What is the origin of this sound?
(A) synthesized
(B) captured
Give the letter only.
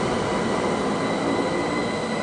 B